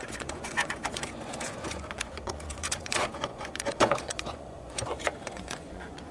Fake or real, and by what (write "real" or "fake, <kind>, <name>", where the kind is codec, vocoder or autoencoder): fake, vocoder, Vocos